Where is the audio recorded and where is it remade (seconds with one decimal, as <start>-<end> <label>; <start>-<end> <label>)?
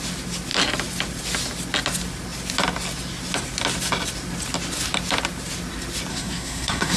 0.0-6.1 recorded; 6.1-7.0 remade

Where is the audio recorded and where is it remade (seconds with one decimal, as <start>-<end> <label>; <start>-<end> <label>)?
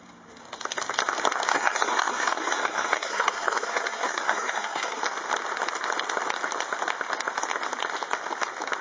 0.0-1.5 recorded; 1.5-5.0 remade; 5.0-8.8 recorded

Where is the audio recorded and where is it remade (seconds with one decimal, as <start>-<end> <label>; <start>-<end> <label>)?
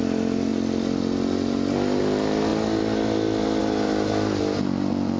0.0-5.2 recorded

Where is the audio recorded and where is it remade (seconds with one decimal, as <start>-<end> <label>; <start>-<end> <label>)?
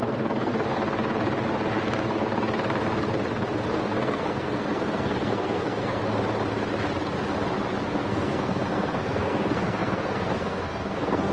0.0-0.5 remade; 0.5-3.7 recorded; 3.7-6.0 remade; 6.0-7.8 recorded; 7.8-11.3 remade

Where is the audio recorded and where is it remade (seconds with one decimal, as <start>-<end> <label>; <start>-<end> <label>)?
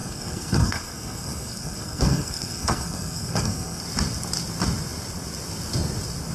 0.0-3.8 remade; 3.8-6.3 recorded